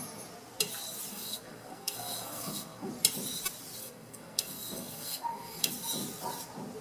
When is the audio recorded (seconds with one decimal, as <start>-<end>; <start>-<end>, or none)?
0.0-1.1; 2.9-3.8; 5.7-6.8